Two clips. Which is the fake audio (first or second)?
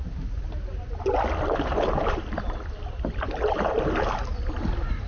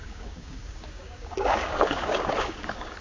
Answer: second